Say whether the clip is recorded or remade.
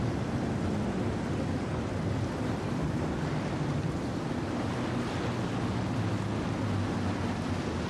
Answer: recorded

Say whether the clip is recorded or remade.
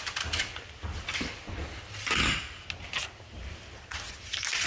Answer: recorded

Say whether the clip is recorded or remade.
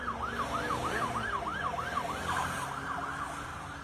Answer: recorded